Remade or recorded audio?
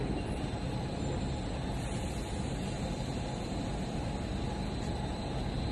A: recorded